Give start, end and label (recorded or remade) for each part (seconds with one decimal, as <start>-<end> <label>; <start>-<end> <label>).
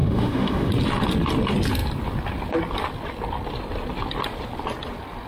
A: 0.0-0.7 remade; 0.7-5.3 recorded